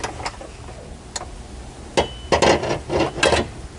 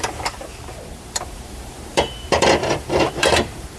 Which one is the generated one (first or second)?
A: second